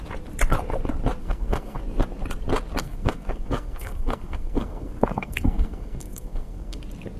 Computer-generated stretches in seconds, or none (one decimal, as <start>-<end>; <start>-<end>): 1.2-1.8; 2.8-6.8